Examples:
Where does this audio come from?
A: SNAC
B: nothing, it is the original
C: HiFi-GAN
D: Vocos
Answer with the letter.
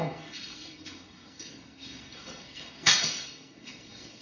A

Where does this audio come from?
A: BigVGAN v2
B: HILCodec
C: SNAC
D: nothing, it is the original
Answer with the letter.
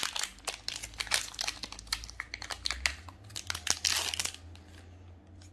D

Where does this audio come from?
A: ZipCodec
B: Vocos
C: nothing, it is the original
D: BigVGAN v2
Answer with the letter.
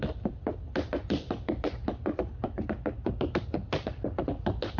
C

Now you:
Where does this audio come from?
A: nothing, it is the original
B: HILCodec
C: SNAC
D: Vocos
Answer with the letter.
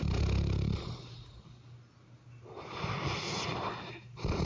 A